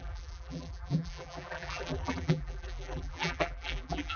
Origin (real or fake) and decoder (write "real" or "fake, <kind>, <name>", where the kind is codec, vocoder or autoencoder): fake, vocoder, BigVGAN v2